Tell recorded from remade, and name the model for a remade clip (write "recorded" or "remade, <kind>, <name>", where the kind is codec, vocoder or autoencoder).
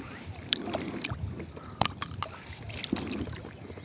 recorded